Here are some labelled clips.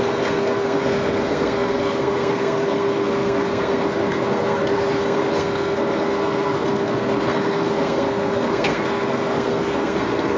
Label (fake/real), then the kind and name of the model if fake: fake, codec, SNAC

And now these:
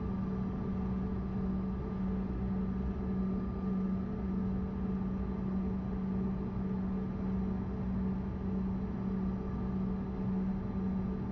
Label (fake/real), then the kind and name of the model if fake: real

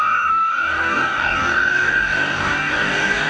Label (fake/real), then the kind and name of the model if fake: fake, codec, DAC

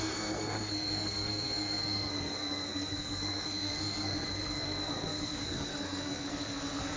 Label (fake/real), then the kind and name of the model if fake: fake, codec, SNAC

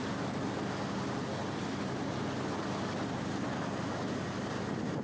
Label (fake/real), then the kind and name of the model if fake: real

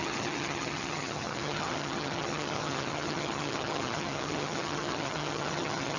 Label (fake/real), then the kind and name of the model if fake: fake, vocoder, HiFi-GAN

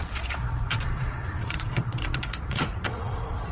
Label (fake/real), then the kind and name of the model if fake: fake, vocoder, Vocos